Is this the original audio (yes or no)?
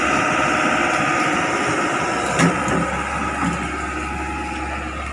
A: yes